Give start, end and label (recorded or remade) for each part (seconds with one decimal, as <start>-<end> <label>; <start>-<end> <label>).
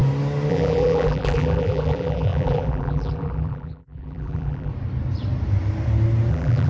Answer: 0.0-0.5 recorded; 0.5-4.7 remade; 4.7-6.3 recorded; 6.3-6.7 remade